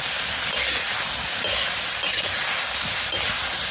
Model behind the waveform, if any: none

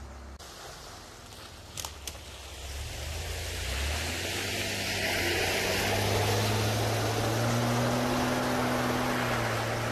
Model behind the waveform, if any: none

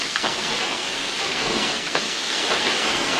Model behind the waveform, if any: codec, SNAC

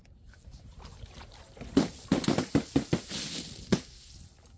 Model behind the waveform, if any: none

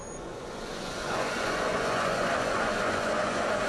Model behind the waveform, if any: vocoder, Vocos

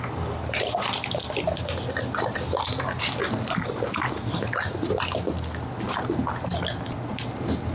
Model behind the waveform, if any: none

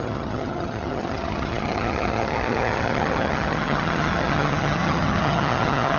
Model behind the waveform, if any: vocoder, HiFi-GAN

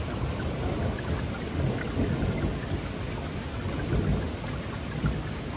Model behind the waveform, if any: none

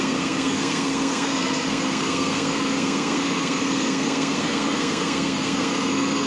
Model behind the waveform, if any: codec, SNAC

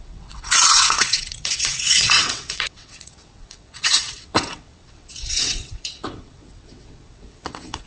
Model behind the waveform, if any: vocoder, WaveNeXt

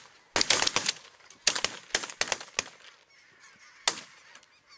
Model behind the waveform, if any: none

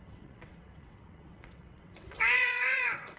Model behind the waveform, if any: vocoder, WaveNeXt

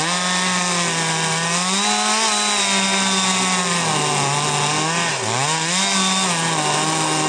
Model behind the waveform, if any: none